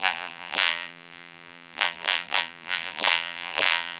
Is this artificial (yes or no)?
yes